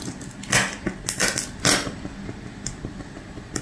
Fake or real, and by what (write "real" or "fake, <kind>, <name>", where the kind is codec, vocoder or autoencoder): real